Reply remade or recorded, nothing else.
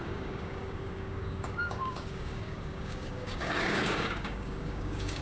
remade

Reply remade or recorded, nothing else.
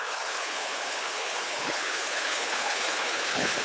remade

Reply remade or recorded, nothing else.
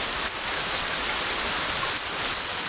recorded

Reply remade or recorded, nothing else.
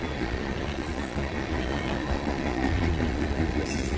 remade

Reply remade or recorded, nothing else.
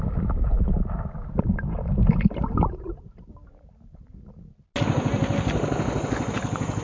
recorded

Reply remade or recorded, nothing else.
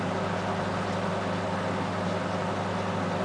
recorded